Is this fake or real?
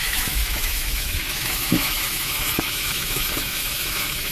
fake